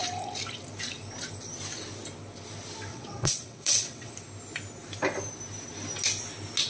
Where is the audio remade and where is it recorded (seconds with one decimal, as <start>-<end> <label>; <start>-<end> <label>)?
0.0-2.9 recorded; 2.9-4.1 remade; 4.1-6.7 recorded